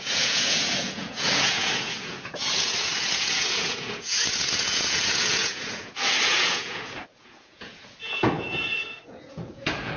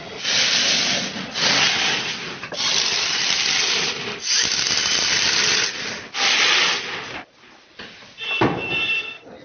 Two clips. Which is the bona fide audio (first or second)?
second